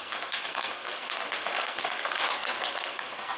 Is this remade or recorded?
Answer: remade